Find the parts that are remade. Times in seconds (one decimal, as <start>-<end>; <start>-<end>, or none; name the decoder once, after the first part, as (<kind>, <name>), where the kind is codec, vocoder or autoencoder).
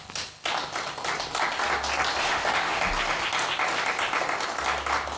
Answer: 2.2-2.8 (autoencoder, DAC-VAE)